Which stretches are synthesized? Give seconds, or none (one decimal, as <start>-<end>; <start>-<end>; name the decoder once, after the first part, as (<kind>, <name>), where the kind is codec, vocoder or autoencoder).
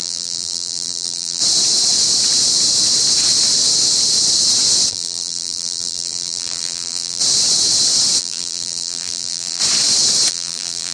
0.0-1.4 (vocoder, BigVGAN v2); 4.9-7.2; 8.2-9.6; 10.3-10.9